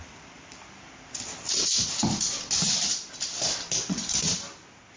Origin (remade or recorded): recorded